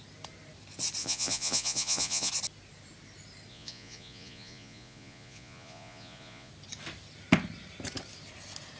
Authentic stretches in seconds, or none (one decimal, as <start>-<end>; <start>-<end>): 0.0-1.0; 2.3-3.5; 6.5-8.8

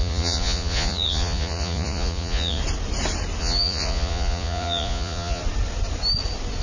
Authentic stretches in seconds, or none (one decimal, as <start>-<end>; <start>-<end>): 2.6-3.4; 5.4-6.6